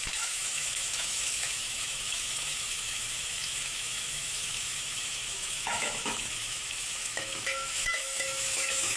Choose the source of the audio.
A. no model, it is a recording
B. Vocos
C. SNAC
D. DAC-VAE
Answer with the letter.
D